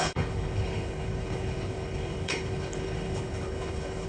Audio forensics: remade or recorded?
remade